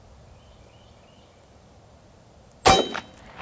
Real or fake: real